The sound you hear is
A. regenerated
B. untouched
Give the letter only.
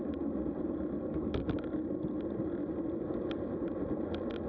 B